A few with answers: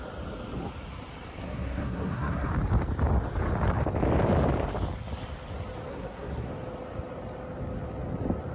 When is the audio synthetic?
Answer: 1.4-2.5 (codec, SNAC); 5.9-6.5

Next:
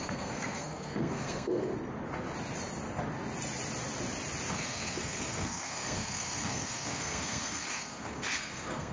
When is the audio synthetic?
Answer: 0.0-1.7 (codec, SNAC); 4.5-8.9

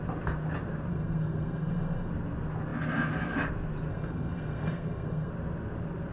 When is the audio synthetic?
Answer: 0.9-2.1 (codec, SNAC); 3.9-5.3

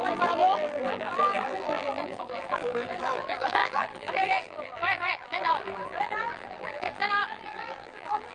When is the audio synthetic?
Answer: 0.0-8.3 (vocoder, BigVGAN v2)

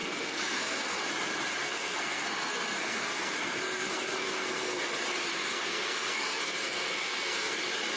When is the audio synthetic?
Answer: 0.0-1.0 (codec, SNAC); 1.6-4.8; 5.3-7.6

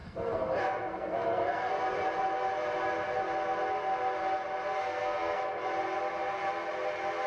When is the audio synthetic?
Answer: 0.0-1.7 (codec, SNAC); 4.8-5.4

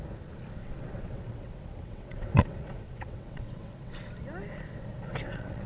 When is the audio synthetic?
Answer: 0.6-4.0 (vocoder, WaveNeXt); 5.1-5.7